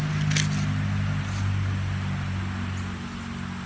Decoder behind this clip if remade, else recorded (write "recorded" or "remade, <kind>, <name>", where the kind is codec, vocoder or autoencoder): recorded